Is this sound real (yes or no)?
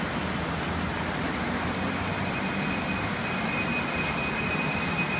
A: yes